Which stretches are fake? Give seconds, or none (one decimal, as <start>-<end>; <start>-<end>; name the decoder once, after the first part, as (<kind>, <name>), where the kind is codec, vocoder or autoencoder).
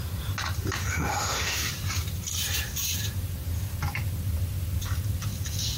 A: 0.8-1.7 (autoencoder, DAC-VAE)